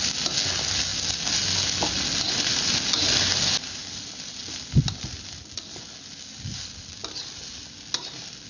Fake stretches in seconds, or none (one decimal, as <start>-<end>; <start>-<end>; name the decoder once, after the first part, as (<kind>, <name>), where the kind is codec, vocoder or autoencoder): none